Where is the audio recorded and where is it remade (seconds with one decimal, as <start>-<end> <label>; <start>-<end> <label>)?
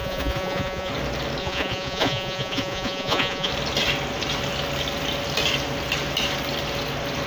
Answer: 0.0-0.9 remade; 0.9-1.4 recorded; 1.4-3.5 remade; 3.5-7.3 recorded